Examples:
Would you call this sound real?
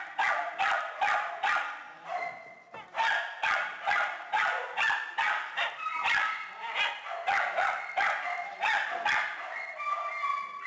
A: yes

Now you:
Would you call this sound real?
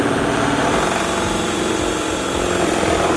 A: no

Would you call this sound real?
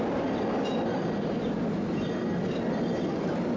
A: yes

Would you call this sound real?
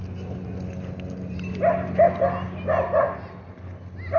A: yes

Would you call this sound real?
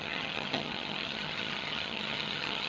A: no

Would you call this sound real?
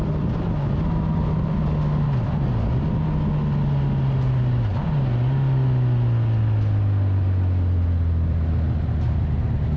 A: yes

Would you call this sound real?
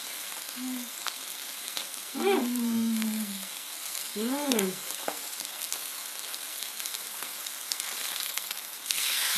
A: no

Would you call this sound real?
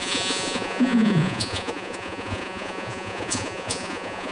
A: no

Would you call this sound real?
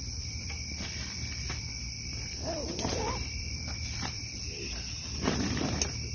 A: no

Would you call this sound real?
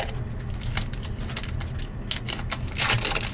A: yes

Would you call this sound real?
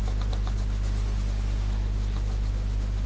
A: yes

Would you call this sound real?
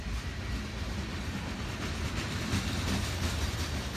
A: yes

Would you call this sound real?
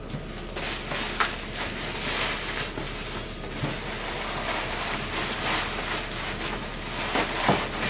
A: yes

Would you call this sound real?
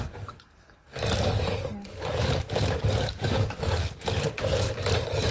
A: no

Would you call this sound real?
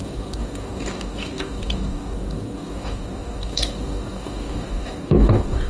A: no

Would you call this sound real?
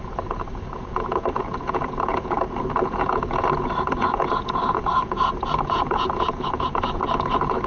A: no